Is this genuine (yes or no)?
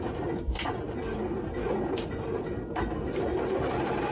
yes